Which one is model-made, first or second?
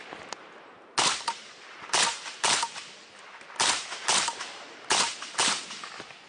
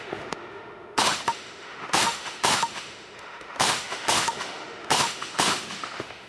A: second